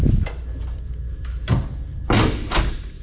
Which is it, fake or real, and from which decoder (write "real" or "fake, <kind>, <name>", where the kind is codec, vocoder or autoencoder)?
real